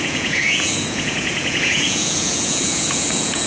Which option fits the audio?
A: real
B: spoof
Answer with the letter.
B